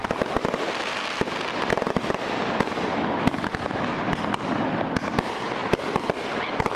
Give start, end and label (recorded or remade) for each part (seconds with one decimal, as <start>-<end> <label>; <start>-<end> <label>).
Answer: 0.0-6.8 recorded